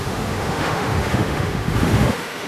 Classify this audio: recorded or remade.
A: remade